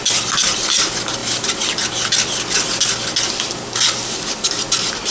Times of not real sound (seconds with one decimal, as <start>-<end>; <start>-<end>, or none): none